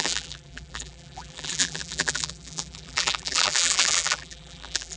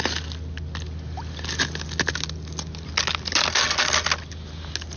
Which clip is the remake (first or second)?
first